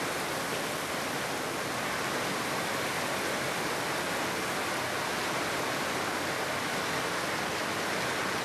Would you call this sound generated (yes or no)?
no